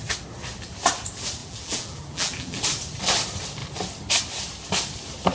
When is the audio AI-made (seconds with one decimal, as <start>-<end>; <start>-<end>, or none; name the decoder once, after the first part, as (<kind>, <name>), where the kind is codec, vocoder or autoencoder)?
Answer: 1.4-2.6 (vocoder, BigVGAN v2)